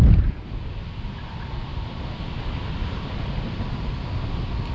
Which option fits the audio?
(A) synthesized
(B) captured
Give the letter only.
B